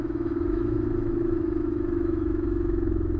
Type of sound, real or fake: fake